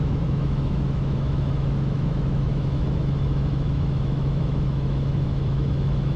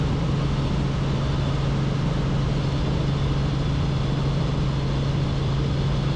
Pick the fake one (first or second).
first